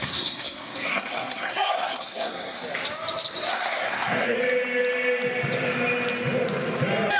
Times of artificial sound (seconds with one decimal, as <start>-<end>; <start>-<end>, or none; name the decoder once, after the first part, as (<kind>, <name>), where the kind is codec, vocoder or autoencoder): 0.0-2.6 (codec, SNAC); 3.5-4.4